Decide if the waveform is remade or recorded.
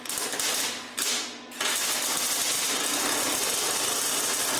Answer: recorded